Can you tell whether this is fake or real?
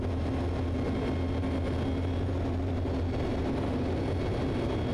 real